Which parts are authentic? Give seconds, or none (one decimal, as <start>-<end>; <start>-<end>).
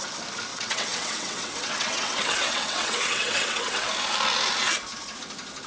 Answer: 0.0-0.5; 3.9-5.7